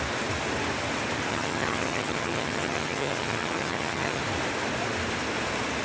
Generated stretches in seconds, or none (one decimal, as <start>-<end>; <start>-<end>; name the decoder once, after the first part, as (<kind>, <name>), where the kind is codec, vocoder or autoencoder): 1.3-4.2 (vocoder, HiFi-GAN)